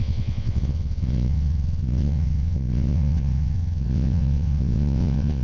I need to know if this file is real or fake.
fake